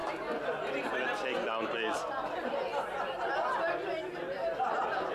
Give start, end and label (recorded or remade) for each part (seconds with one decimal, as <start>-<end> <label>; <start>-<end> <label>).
0.0-5.1 recorded